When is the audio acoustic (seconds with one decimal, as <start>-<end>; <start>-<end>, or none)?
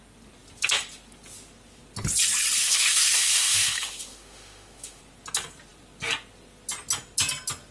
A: 0.0-2.6; 5.0-7.7